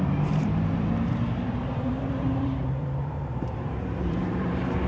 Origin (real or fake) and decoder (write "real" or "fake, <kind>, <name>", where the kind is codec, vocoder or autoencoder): fake, vocoder, BigVGAN v2